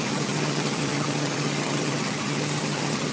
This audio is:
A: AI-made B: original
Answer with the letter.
A